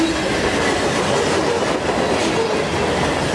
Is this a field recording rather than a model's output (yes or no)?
yes